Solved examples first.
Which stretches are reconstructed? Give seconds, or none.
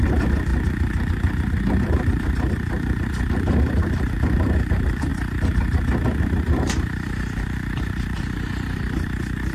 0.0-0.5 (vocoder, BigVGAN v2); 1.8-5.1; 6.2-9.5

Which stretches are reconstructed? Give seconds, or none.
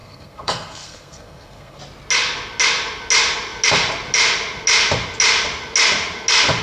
0.0-1.8 (codec, SNAC)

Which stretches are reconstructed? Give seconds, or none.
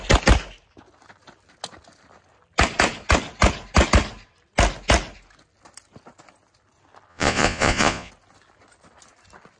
7.1-8.1 (vocoder, Vocos)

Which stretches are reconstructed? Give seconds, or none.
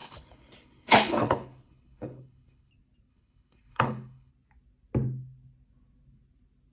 0.0-2.7 (codec, HILCodec); 3.1-4.3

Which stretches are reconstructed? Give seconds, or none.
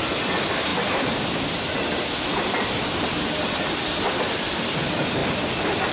none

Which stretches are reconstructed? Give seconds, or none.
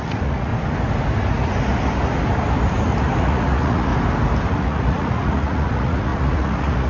0.0-0.5 (vocoder, Vocos); 3.2-3.9; 4.5-6.9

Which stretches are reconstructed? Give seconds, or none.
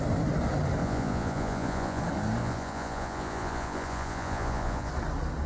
0.8-2.0 (vocoder, Vocos); 2.4-4.9